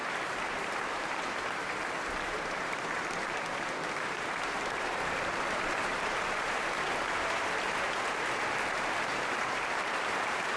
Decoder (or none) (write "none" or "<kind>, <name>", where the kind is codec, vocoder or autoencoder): vocoder, BigVGAN v2